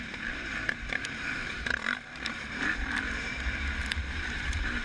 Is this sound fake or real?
fake